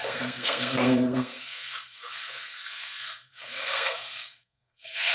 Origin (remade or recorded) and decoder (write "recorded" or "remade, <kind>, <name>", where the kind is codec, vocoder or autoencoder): remade, codec, SNAC